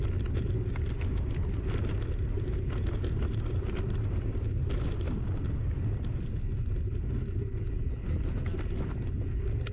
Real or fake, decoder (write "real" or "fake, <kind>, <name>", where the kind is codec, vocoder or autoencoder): real